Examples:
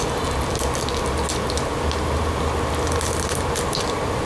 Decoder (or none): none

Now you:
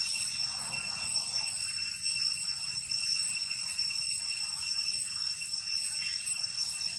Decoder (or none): vocoder, Vocos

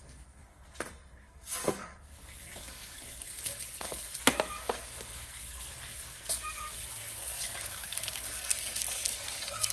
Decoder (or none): codec, SNAC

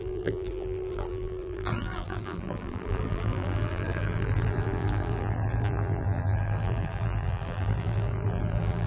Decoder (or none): vocoder, BigVGAN v2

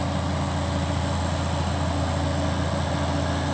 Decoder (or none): none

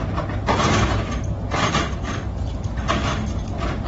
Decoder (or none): none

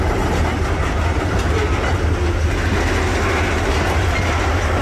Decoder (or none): none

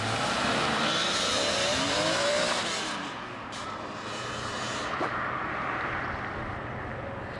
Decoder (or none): vocoder, BigVGAN v2